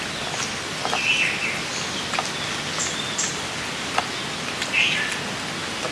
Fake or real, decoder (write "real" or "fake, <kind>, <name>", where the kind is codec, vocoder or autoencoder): real